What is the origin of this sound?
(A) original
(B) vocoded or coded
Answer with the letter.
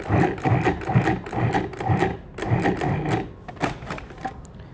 A